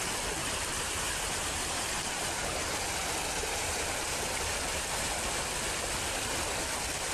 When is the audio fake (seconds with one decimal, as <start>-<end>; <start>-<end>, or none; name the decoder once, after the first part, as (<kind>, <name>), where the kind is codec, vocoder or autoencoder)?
0.4-2.7 (vocoder, BigVGAN v2); 3.4-5.1

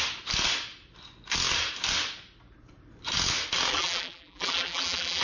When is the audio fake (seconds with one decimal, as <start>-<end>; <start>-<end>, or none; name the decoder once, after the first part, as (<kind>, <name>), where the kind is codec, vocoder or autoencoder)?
3.7-5.2 (vocoder, BigVGAN v2)

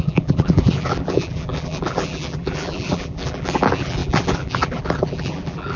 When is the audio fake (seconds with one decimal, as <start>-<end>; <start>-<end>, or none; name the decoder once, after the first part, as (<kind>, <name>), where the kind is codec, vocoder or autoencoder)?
0.0-5.8 (vocoder, BigVGAN v2)

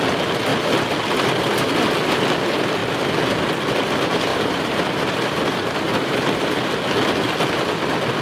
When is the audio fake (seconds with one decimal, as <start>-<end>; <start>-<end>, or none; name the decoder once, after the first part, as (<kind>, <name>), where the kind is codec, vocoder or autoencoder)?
4.3-6.7 (vocoder, BigVGAN v2)

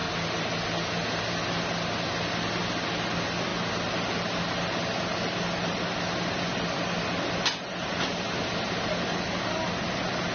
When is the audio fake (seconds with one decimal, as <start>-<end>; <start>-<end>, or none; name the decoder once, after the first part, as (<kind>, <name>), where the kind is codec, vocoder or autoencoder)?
none

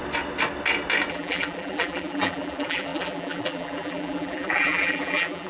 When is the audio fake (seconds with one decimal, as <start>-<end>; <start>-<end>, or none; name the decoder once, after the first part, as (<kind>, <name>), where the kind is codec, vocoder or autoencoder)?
1.1-5.5 (vocoder, BigVGAN v2)

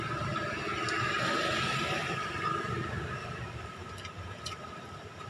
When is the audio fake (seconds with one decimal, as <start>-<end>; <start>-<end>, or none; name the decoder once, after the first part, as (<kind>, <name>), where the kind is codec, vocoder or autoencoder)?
none

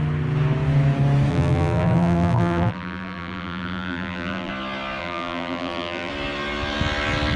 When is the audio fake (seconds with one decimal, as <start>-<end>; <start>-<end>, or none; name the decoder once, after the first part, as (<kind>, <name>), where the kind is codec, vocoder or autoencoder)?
1.3-4.5 (vocoder, BigVGAN v2); 5.0-6.1